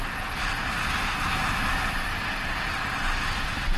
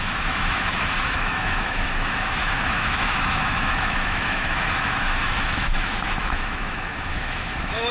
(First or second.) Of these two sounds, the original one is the first